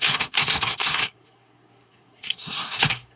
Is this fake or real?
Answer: fake